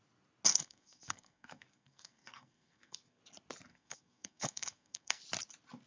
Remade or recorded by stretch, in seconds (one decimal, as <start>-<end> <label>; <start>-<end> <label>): 0.0-0.5 recorded; 0.5-3.2 remade; 3.2-3.7 recorded; 3.7-5.2 remade; 5.2-5.9 recorded